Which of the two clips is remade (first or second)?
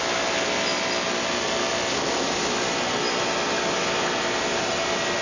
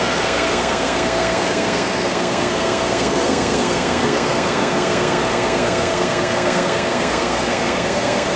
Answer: second